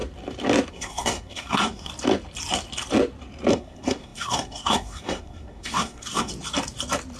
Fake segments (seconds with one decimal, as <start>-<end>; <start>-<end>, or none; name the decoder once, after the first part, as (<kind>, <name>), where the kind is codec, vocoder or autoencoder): 0.7-1.9 (codec, SNAC); 3.5-6.3